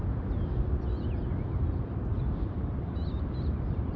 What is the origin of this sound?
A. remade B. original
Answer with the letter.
A